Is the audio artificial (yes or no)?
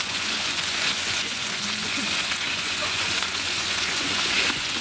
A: yes